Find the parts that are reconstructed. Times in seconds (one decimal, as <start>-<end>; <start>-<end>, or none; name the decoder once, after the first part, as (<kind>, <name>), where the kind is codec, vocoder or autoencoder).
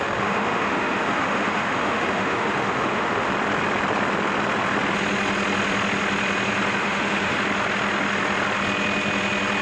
0.0-3.3 (autoencoder, DAC-VAE); 6.8-7.4